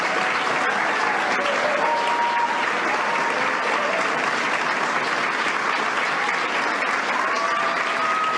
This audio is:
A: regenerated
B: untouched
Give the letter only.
B